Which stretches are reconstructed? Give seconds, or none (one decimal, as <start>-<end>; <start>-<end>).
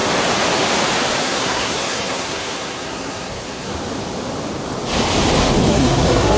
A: 1.2-3.7; 5.7-6.4